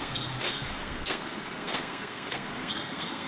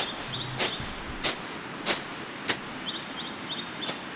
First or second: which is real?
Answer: second